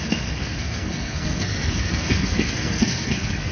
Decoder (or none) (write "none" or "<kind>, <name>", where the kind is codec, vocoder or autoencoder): codec, SNAC